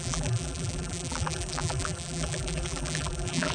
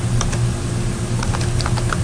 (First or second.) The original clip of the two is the second